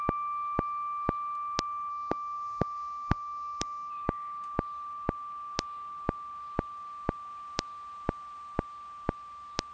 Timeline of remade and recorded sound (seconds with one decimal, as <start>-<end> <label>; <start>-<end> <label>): 0.0-1.9 recorded; 1.9-3.9 remade; 3.9-9.7 recorded